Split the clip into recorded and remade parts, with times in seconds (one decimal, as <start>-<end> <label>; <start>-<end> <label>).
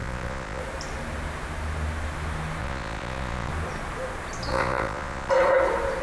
0.0-0.6 remade; 0.6-2.6 recorded; 2.6-3.5 remade; 3.5-4.5 recorded; 4.5-5.3 remade; 5.3-6.0 recorded